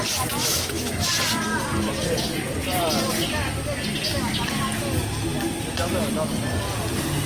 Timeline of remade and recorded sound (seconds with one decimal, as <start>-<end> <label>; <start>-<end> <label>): 0.0-0.4 recorded; 0.4-1.1 remade; 1.1-7.3 recorded

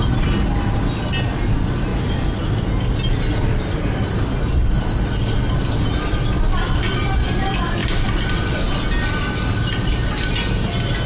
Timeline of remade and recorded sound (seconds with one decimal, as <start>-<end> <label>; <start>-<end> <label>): 0.0-11.1 recorded

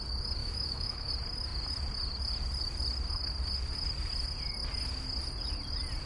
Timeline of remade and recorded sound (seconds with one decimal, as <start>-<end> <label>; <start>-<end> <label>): 0.0-0.4 recorded; 0.4-1.1 remade; 1.1-6.1 recorded

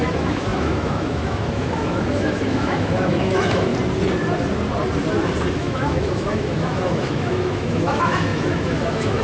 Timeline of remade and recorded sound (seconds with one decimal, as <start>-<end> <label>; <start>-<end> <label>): 0.0-3.7 remade; 3.7-5.5 recorded; 5.5-9.2 remade

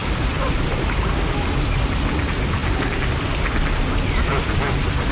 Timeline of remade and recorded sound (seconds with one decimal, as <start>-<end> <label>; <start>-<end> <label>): 0.0-5.1 recorded

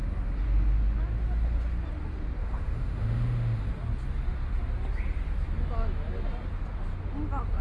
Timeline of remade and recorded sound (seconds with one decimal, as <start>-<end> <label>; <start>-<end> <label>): 0.0-2.4 recorded; 2.4-3.7 remade; 3.7-7.6 recorded